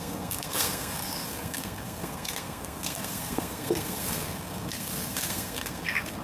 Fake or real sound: fake